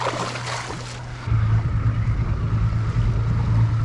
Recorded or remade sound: recorded